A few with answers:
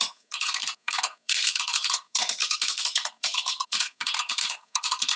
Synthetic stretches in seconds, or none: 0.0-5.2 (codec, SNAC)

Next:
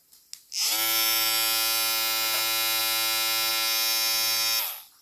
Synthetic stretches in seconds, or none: none

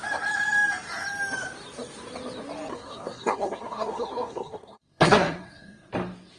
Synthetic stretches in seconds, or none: 2.7-5.9 (codec, SNAC)

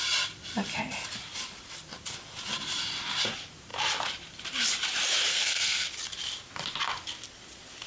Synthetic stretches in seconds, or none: 5.3-5.9 (codec, SNAC)

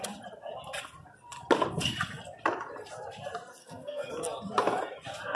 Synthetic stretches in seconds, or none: 3.6-4.1 (codec, SNAC)

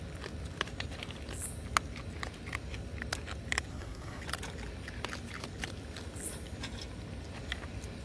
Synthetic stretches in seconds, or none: 3.7-4.2 (codec, SNAC)

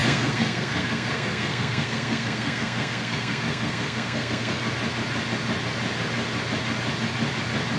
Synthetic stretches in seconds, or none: 0.0-4.7 (codec, SNAC)